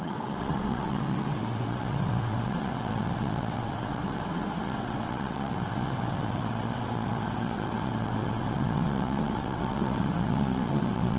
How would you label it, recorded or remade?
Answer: remade